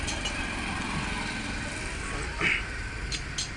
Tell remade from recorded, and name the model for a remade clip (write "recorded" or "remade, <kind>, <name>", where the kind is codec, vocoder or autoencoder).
recorded